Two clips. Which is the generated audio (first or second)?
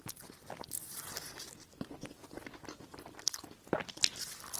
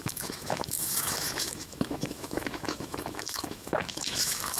second